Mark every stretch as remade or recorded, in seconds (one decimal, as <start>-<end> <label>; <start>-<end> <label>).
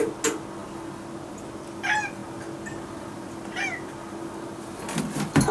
0.0-5.5 recorded